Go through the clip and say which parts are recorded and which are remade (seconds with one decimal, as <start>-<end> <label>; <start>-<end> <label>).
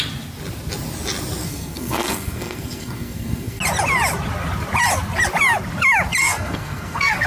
0.0-1.4 recorded; 1.4-3.6 remade; 3.6-6.2 recorded; 6.2-7.3 remade